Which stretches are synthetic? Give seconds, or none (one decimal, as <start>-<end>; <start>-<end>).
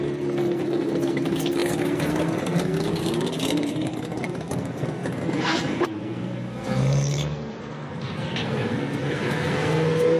0.0-10.2